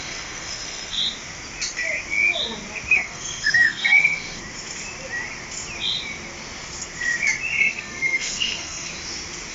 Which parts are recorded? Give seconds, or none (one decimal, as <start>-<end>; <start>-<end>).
1.0-2.9; 4.4-7.6; 8.9-9.5